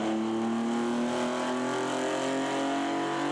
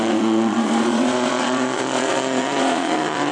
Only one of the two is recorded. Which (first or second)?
first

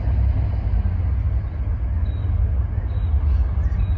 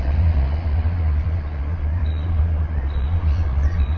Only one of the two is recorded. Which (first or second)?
first